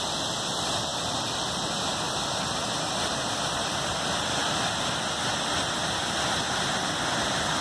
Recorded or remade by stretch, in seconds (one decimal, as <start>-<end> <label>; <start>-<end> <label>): 0.0-7.6 recorded

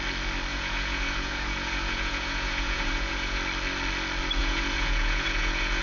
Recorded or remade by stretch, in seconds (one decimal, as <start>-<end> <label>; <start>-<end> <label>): 0.0-0.5 recorded; 0.5-3.4 remade; 3.4-4.4 recorded; 4.4-5.8 remade

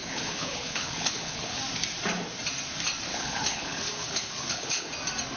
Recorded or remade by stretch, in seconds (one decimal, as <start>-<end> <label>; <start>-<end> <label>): 0.0-1.6 remade; 1.6-3.1 recorded; 3.1-4.9 remade; 4.9-5.4 recorded

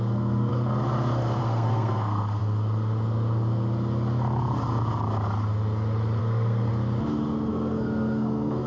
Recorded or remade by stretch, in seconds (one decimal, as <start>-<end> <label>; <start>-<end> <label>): 0.0-0.5 remade; 0.5-1.4 recorded; 1.4-2.4 remade; 2.4-6.2 recorded; 6.2-6.7 remade; 6.7-7.5 recorded; 7.5-8.7 remade

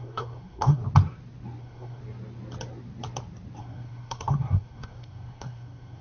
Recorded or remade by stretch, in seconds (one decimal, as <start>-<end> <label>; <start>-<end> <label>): 0.0-0.8 remade; 0.8-1.6 recorded; 1.6-2.0 remade; 2.0-3.6 recorded; 3.6-6.0 remade

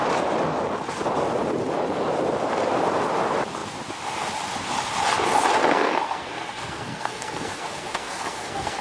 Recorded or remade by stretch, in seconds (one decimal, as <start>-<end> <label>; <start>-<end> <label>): 0.0-5.6 recorded; 5.6-8.8 remade